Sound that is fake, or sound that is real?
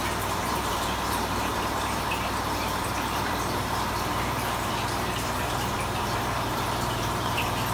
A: fake